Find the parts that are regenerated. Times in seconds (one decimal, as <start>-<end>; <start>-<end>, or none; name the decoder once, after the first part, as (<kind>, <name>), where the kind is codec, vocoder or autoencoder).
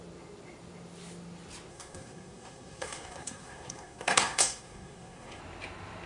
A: 1.7-5.4 (codec, SNAC)